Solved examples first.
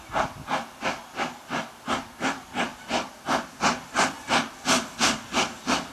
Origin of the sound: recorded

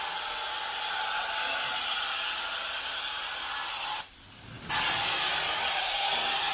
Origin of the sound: recorded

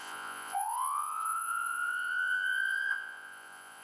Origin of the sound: remade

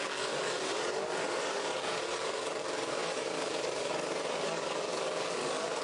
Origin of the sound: remade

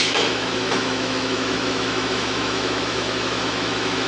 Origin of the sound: remade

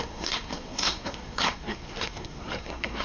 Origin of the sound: remade